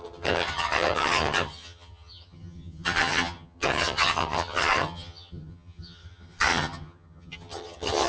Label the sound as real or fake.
fake